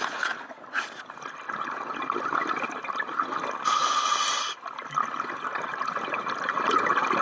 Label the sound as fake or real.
real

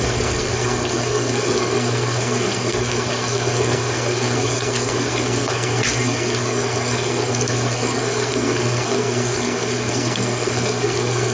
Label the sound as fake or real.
fake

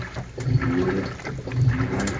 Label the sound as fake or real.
real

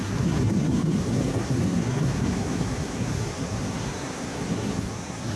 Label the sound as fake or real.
fake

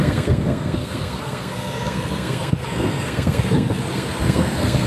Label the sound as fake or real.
fake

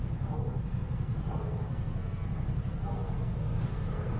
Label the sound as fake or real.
fake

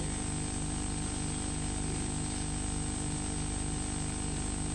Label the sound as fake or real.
real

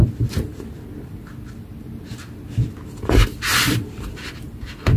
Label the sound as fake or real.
real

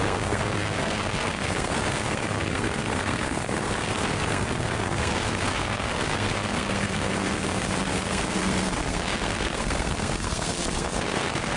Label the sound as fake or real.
fake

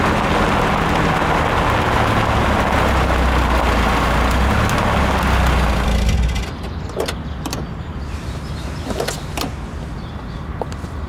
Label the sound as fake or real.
real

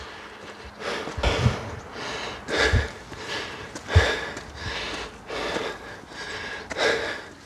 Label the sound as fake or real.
real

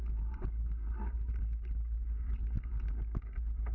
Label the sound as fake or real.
real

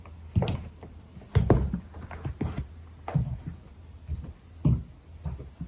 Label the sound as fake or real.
real